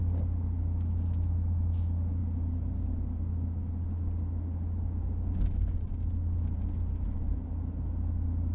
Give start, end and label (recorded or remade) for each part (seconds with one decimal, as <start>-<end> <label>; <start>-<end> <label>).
0.0-8.5 recorded